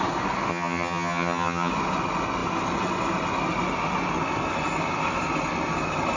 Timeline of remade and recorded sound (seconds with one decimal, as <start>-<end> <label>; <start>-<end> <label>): 0.0-0.5 recorded; 0.5-1.7 remade; 1.7-6.2 recorded